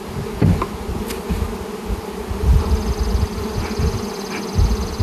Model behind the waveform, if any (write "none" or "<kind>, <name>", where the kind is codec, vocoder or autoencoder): none